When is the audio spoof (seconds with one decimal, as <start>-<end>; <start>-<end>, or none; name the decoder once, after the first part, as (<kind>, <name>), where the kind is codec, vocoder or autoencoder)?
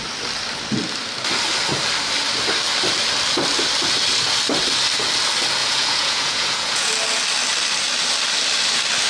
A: 5.6-6.9 (vocoder, Vocos)